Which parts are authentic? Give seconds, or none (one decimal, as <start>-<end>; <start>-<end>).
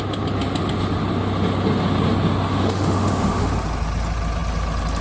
0.0-2.5; 3.5-5.0